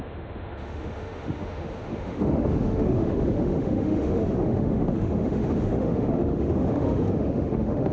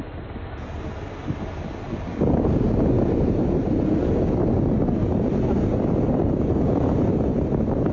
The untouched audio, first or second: second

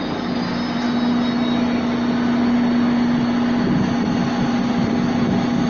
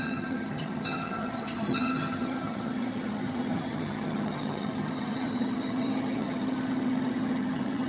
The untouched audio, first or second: first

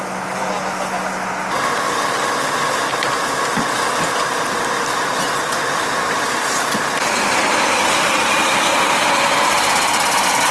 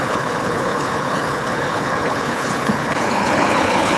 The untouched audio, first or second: first